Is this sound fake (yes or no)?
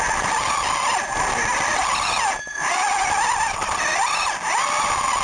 no